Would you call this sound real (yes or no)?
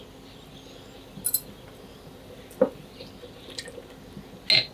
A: yes